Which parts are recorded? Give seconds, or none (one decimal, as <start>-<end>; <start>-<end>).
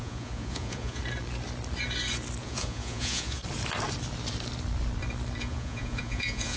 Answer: 1.0-2.4; 3.4-5.4